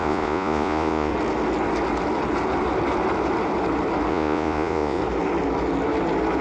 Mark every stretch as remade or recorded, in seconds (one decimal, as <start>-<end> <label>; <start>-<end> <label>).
0.0-1.1 remade; 1.1-4.1 recorded; 4.1-5.0 remade; 5.0-6.4 recorded